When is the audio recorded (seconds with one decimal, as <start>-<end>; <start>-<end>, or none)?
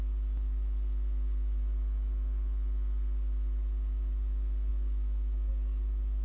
0.0-4.7; 5.5-6.2